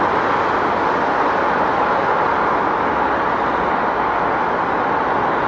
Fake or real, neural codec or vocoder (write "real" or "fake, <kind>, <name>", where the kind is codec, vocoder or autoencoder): real